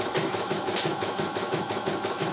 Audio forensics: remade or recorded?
remade